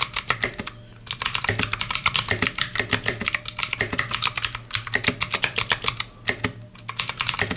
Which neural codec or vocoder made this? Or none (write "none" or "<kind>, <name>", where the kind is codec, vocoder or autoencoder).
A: none